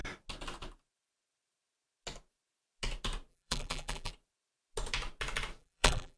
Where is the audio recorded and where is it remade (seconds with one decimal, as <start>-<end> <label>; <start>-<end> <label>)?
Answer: 0.0-3.3 recorded; 3.3-4.1 remade; 4.1-5.6 recorded; 5.6-6.2 remade